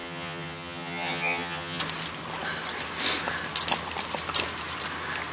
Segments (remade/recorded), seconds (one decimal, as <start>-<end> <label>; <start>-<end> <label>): 0.0-1.8 remade; 1.8-5.3 recorded